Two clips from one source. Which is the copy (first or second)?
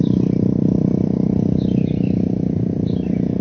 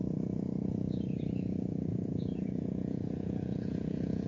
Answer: second